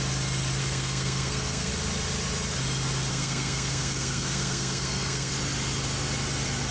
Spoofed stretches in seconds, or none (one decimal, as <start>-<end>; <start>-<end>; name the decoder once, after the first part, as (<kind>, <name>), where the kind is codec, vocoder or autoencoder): 0.6-1.7 (codec, SNAC); 3.1-5.3